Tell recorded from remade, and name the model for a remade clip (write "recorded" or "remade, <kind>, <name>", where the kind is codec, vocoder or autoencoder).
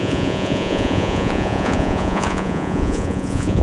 remade, vocoder, Vocos